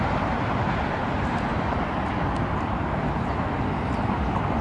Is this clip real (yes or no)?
yes